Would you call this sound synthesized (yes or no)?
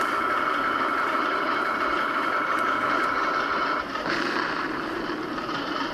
yes